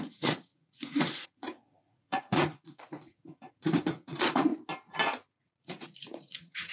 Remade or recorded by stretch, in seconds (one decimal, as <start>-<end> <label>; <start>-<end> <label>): 0.0-4.5 remade; 4.5-5.3 recorded; 5.3-6.7 remade